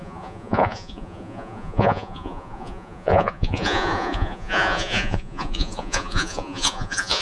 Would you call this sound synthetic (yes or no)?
yes